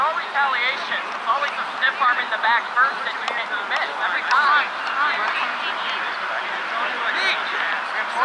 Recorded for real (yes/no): yes